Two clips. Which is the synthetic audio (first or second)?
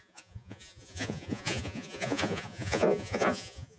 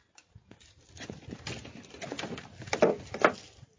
first